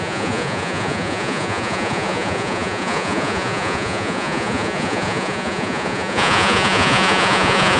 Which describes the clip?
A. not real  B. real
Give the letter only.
A